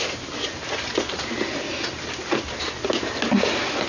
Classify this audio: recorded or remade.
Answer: recorded